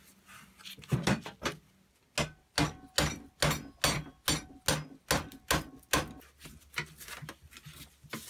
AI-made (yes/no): no